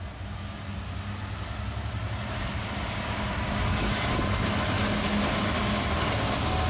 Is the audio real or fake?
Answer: real